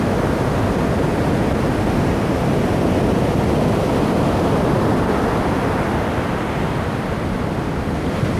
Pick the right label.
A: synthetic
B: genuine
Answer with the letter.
B